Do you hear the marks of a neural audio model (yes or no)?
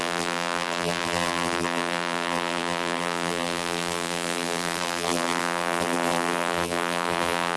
yes